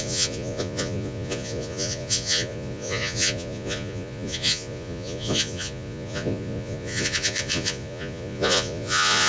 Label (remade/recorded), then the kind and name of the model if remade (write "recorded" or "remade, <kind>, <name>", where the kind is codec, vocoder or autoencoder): remade, vocoder, Vocos